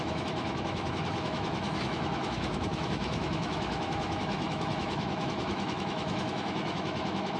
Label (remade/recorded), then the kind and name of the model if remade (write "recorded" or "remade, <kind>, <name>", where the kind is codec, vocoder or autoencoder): remade, autoencoder, DAC-VAE